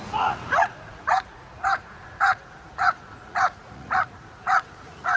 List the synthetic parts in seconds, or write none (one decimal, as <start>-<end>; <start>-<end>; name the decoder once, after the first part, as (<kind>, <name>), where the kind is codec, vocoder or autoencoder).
0.0-5.2 (vocoder, Vocos)